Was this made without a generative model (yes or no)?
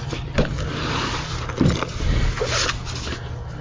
yes